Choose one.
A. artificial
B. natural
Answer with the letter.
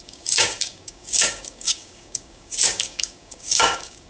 A